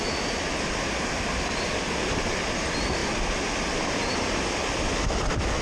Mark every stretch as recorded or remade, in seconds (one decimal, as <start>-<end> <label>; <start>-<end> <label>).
0.0-5.6 recorded

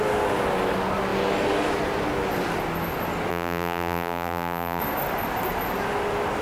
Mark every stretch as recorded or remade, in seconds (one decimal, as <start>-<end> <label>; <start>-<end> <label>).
0.0-3.3 recorded; 3.3-4.8 remade; 4.8-6.4 recorded

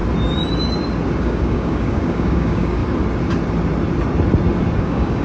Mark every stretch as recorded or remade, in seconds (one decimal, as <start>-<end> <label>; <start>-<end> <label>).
0.0-1.2 recorded; 1.2-2.8 remade; 2.8-4.8 recorded; 4.8-5.2 remade

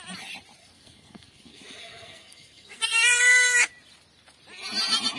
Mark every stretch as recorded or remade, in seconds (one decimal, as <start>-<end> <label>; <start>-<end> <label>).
0.0-0.6 recorded; 0.6-3.7 remade; 3.7-5.2 recorded

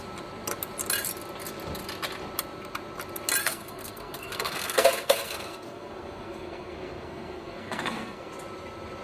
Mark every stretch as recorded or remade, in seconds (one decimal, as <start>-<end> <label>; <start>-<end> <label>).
0.0-3.4 recorded; 3.4-8.3 remade; 8.3-9.0 recorded